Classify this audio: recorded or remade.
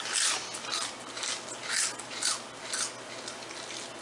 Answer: recorded